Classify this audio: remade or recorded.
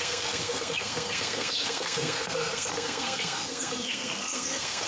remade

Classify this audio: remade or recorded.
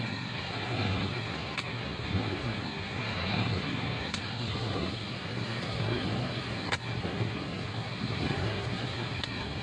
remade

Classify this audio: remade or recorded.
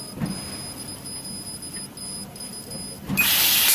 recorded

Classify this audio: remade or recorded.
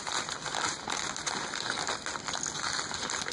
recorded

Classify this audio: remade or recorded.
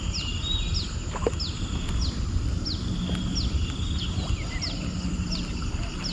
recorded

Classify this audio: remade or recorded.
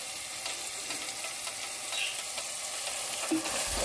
recorded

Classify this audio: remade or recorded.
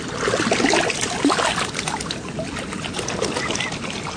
recorded